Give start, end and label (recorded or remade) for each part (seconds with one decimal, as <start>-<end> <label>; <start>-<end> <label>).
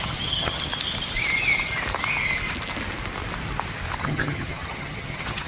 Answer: 0.0-0.7 remade; 0.7-4.0 recorded; 4.0-5.5 remade